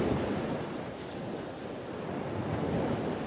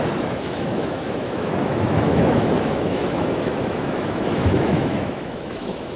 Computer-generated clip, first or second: second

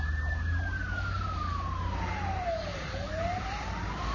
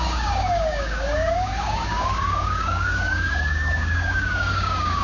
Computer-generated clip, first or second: second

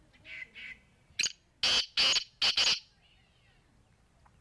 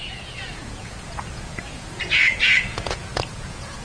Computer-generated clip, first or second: second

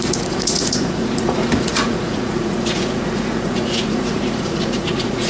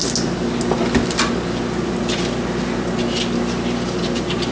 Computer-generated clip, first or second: first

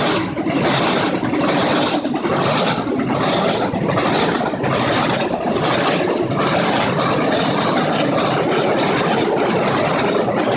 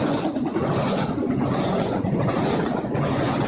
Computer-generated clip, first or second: second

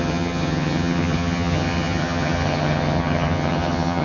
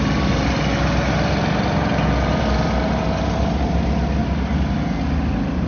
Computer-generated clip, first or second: first